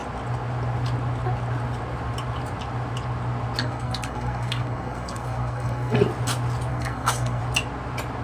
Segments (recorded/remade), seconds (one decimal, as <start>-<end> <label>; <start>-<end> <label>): 0.0-3.6 recorded; 3.6-6.0 remade; 6.0-6.7 recorded; 6.7-7.4 remade; 7.4-8.2 recorded